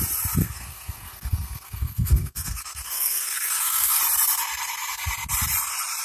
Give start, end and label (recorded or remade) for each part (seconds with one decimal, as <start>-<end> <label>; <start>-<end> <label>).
0.0-0.4 recorded; 0.4-4.0 remade; 4.0-6.0 recorded

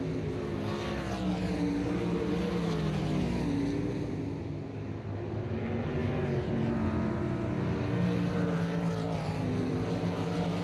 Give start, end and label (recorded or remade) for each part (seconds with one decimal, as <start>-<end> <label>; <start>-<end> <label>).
0.0-10.6 recorded

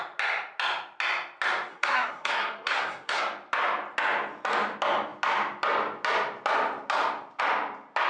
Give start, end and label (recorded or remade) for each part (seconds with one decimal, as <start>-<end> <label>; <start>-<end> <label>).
0.0-1.7 recorded; 1.7-3.2 remade; 3.2-8.1 recorded

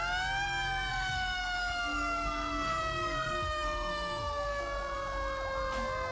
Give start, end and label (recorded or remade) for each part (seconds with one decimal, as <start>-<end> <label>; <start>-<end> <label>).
0.0-0.9 recorded; 0.9-4.6 remade; 4.6-6.1 recorded

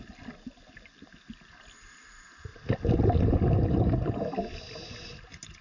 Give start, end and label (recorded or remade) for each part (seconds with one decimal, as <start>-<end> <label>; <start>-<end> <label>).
0.0-5.6 recorded